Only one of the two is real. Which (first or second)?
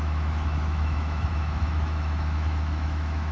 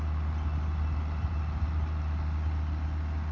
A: second